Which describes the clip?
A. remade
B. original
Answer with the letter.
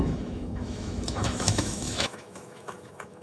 A